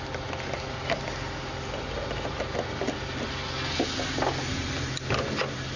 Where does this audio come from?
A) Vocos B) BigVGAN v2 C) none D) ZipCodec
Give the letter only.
C